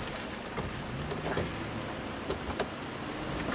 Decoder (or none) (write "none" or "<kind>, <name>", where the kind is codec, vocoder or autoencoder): vocoder, BigVGAN v2